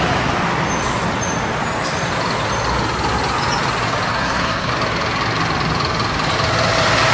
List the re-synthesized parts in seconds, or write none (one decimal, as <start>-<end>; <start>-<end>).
4.1-4.7